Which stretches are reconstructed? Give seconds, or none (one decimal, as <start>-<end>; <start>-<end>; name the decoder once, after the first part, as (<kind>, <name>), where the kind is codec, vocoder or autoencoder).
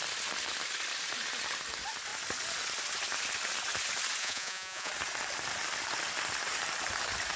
4.2-4.9 (vocoder, Vocos)